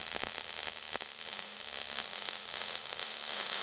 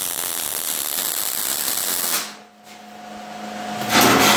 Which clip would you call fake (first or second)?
first